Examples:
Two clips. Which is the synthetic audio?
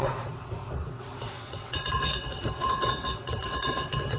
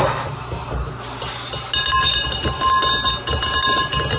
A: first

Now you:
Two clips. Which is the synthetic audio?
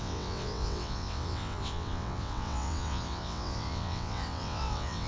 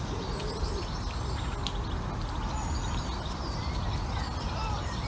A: first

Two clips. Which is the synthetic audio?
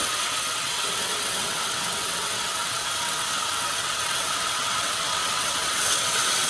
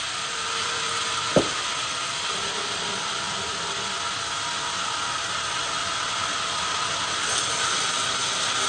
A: first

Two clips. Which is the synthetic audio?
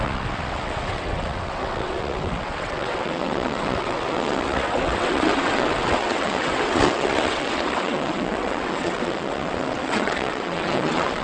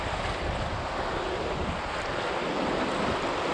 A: first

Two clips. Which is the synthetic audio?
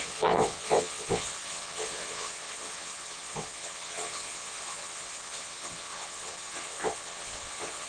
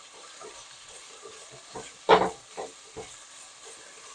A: first